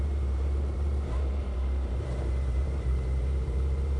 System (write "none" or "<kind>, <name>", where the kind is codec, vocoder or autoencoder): vocoder, BigVGAN v2